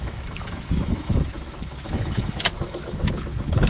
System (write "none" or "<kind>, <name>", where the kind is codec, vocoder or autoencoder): autoencoder, DAC-VAE